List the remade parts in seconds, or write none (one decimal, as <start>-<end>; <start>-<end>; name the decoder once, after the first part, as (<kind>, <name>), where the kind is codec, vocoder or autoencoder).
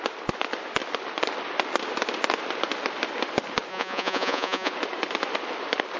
3.7-4.7 (vocoder, Vocos)